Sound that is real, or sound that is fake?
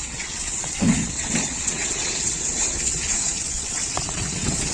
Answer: fake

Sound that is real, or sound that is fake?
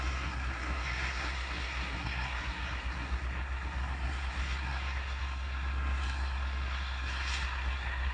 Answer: fake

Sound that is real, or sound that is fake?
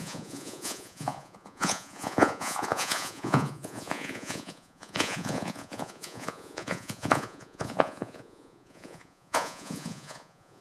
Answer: fake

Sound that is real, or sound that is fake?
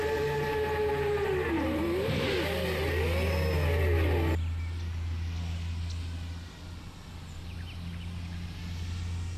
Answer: real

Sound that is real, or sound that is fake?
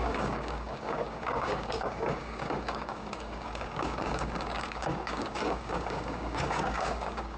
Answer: fake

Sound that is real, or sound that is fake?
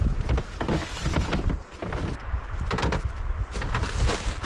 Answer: real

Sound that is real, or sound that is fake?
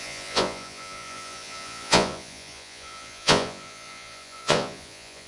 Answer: fake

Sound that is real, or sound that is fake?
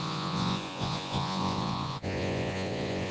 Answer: fake